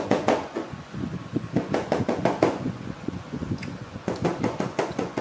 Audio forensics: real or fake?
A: fake